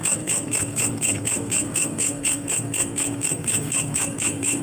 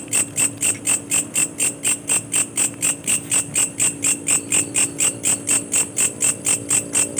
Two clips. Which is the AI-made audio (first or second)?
first